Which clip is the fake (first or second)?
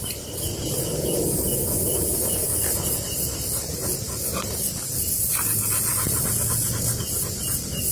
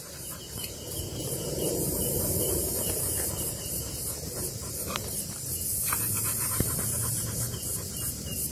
second